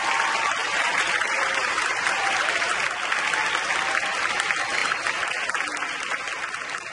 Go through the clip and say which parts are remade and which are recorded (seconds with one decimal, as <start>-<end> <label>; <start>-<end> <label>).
0.0-0.6 recorded; 0.6-2.7 remade; 2.7-4.8 recorded; 4.8-5.6 remade; 5.6-6.9 recorded